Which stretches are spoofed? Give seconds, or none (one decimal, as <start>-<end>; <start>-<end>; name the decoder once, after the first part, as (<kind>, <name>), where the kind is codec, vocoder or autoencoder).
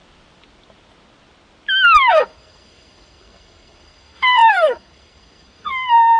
2.1-6.2 (codec, SNAC)